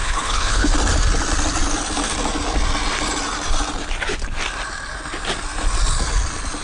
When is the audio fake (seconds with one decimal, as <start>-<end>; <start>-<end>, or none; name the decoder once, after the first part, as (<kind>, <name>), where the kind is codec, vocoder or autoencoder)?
0.0-0.7 (codec, HILCodec)